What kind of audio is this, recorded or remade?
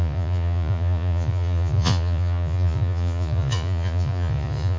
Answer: remade